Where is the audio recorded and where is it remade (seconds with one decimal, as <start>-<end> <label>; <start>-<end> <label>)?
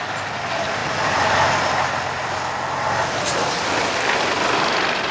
0.0-5.1 recorded